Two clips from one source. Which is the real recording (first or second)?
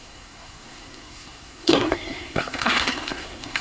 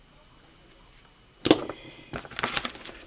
second